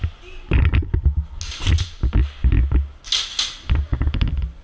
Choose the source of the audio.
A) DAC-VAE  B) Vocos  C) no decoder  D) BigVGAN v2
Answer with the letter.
C